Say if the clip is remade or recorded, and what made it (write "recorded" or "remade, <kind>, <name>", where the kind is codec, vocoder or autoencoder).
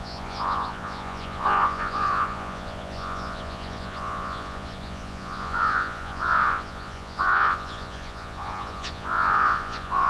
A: remade, vocoder, Vocos